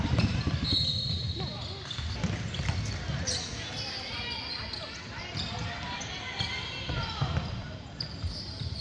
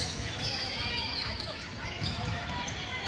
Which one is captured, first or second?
first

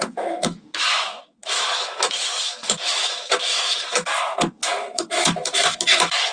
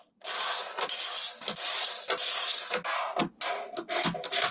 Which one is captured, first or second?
second